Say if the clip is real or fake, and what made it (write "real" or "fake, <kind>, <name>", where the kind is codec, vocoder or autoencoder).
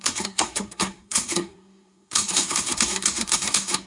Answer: fake, codec, SNAC